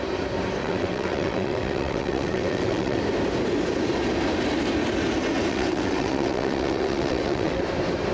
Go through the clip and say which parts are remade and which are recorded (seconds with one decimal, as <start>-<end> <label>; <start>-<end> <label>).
0.0-0.6 recorded; 0.6-3.0 remade; 3.0-5.5 recorded; 5.5-7.6 remade; 7.6-8.1 recorded